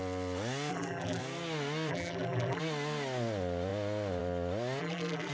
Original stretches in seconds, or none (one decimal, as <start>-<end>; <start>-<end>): 0.0-0.7; 1.2-1.9; 2.6-4.8